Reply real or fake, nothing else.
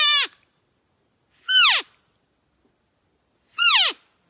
real